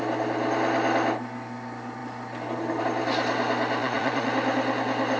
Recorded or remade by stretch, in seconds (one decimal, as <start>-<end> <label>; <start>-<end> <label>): 0.0-3.8 recorded; 3.8-4.3 remade; 4.3-5.2 recorded